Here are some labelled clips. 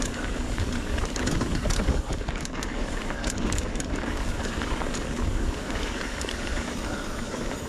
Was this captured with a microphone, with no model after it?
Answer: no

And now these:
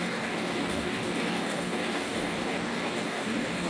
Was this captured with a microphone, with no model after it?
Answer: no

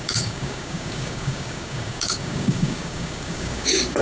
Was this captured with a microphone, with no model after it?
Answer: no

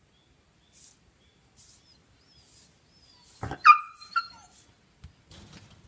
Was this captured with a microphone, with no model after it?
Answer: yes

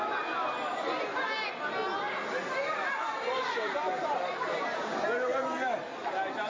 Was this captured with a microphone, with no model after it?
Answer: yes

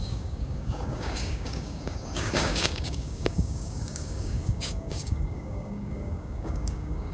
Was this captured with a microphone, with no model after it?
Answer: no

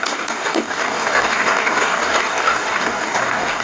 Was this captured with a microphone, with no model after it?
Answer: no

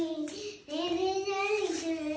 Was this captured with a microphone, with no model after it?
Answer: yes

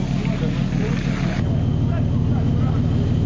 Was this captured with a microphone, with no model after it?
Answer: yes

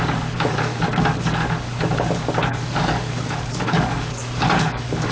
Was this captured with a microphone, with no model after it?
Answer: no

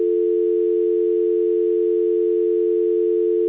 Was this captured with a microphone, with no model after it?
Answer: yes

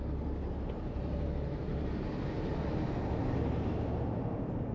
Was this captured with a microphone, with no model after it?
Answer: yes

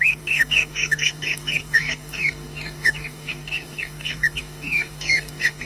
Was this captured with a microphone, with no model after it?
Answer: no